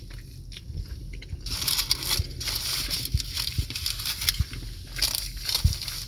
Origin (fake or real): real